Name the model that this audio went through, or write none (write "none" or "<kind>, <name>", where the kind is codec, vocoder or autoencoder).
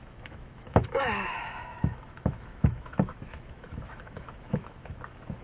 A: autoencoder, DAC-VAE